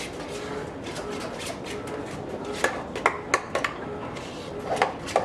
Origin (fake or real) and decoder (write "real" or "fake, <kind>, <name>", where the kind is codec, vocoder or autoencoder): real